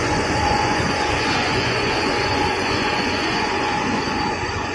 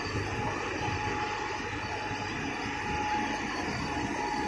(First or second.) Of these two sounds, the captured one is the second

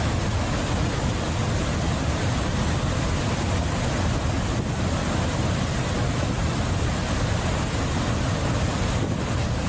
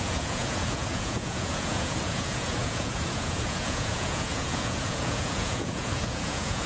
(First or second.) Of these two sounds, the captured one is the first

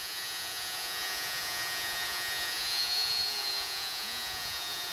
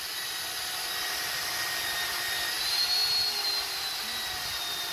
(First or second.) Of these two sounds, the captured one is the second